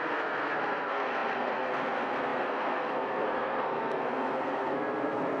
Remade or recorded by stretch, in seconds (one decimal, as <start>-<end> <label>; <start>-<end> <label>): 0.0-5.4 remade